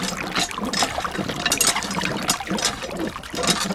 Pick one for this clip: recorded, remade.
recorded